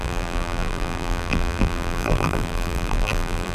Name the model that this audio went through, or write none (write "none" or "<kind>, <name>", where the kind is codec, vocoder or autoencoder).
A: vocoder, BigVGAN v2